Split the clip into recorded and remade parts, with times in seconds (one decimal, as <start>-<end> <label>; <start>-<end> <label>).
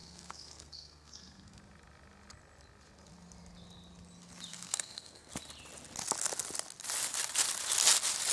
0.0-1.6 remade; 1.6-4.5 recorded; 4.5-5.3 remade; 5.3-8.3 recorded